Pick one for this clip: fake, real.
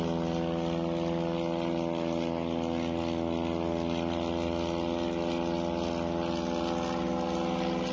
real